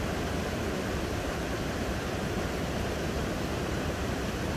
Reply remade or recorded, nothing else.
remade